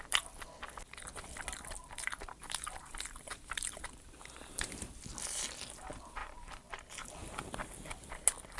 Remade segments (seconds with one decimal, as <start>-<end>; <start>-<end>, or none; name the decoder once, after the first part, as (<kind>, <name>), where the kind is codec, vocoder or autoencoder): 1.8-4.1 (vocoder, BigVGAN v2); 6.2-7.1